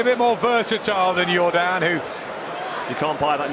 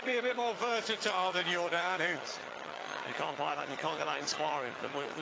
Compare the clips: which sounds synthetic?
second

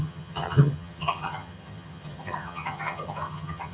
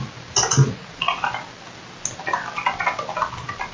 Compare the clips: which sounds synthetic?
first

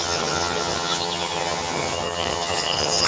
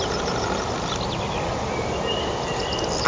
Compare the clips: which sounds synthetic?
first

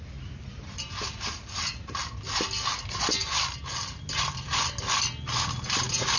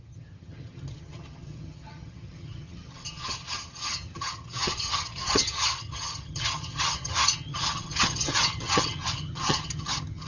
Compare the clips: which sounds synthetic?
second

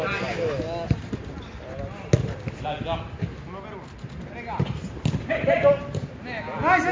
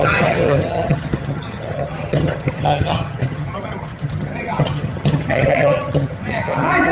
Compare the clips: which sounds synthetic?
second